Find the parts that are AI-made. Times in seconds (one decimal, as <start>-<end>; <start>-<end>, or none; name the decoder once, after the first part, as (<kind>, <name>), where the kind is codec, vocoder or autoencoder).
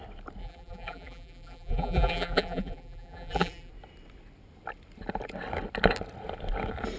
0.4-3.7 (vocoder, BigVGAN v2)